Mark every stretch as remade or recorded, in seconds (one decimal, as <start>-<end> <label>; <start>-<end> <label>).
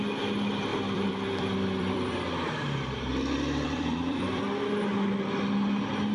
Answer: 0.0-0.7 recorded; 0.7-4.4 remade; 4.4-6.1 recorded